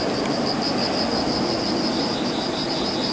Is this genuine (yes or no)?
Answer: yes